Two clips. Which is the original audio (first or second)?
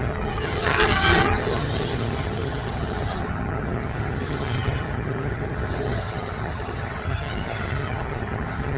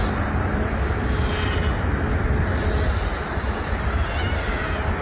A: second